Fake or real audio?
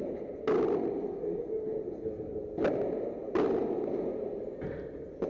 real